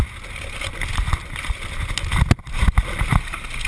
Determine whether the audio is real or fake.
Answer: real